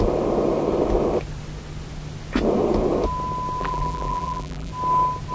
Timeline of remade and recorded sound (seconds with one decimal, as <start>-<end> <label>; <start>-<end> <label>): 0.0-3.6 recorded; 3.6-4.7 remade; 4.7-5.3 recorded